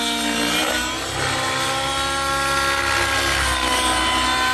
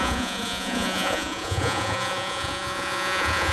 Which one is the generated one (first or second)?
second